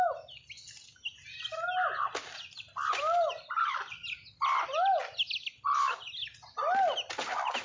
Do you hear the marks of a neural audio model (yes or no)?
no